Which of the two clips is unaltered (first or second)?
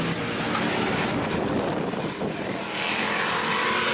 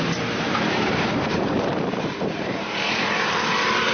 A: first